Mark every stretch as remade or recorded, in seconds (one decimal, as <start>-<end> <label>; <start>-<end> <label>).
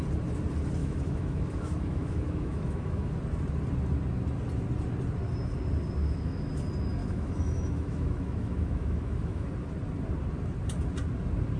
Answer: 0.0-0.8 recorded; 0.8-3.1 remade; 3.1-6.0 recorded; 6.0-6.5 remade; 6.5-7.0 recorded; 7.0-9.5 remade; 9.5-11.6 recorded